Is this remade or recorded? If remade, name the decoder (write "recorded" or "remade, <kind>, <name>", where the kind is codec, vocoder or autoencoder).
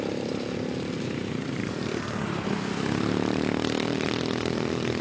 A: remade, vocoder, BigVGAN v2